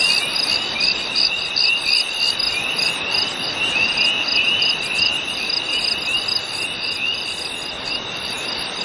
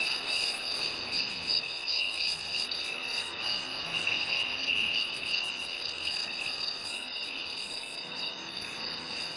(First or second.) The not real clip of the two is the second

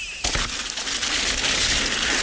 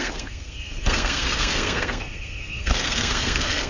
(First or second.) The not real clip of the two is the second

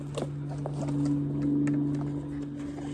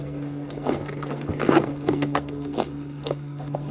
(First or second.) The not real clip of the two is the second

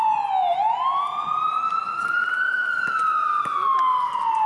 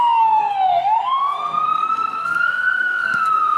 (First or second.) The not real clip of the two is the second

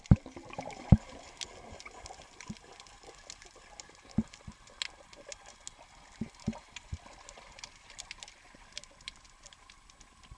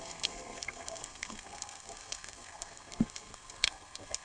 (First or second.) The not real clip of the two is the second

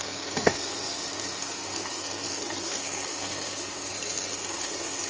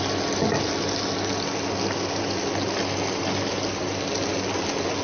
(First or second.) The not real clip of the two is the first